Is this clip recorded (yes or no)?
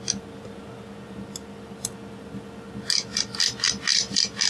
yes